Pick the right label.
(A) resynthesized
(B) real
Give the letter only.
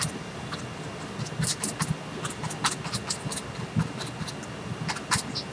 B